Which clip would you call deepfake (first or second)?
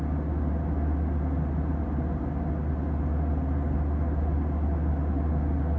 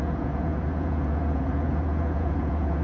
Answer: second